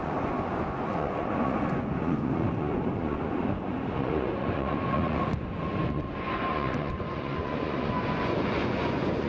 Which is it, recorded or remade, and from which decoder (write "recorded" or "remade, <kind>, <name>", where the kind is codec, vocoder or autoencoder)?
remade, vocoder, Vocos